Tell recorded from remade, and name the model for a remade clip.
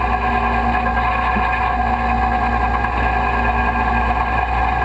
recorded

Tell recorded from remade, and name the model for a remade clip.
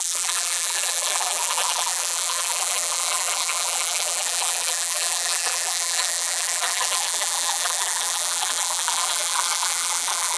remade, vocoder, BigVGAN v2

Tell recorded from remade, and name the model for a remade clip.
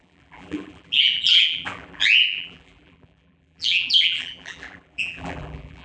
remade, vocoder, BigVGAN v2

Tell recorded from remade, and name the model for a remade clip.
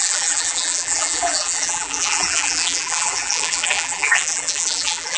remade, vocoder, BigVGAN v2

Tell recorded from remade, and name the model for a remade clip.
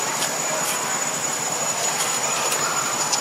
remade, vocoder, BigVGAN v2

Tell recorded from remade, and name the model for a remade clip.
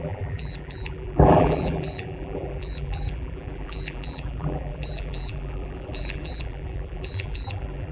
remade, vocoder, BigVGAN v2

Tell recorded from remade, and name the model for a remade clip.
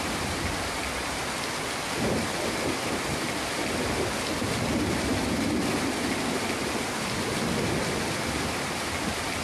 recorded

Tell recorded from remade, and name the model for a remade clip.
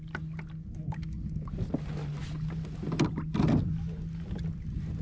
recorded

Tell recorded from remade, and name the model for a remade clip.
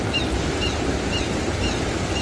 recorded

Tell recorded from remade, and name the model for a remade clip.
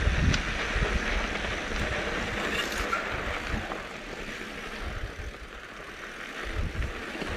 recorded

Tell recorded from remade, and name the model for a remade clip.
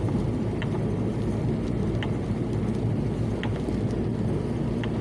recorded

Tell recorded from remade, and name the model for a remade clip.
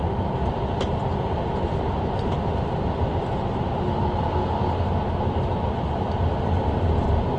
recorded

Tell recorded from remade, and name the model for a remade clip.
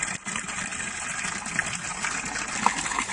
recorded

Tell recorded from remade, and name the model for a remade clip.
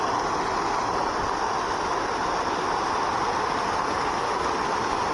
recorded